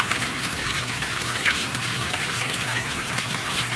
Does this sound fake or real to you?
fake